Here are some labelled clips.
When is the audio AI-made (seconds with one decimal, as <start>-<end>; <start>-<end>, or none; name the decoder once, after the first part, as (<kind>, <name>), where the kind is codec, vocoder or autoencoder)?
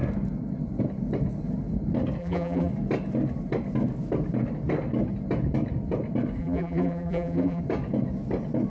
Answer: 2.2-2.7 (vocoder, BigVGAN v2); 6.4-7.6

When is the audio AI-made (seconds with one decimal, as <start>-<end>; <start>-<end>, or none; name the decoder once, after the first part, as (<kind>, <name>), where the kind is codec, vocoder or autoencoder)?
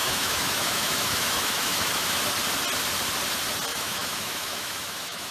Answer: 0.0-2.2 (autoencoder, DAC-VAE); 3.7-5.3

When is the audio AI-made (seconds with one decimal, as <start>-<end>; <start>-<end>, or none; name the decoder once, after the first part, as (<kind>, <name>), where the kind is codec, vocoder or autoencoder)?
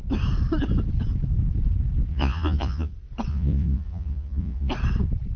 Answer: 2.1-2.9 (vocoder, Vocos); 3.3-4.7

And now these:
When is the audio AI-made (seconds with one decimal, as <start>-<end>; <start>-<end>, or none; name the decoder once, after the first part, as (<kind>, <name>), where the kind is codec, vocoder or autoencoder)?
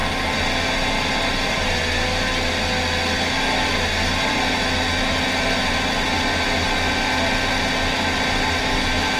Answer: none